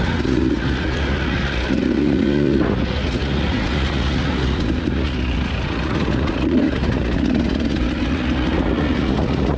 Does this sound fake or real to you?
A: fake